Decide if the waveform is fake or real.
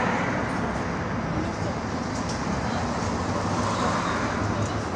real